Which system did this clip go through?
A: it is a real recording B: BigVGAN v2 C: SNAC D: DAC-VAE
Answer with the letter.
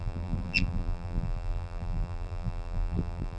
B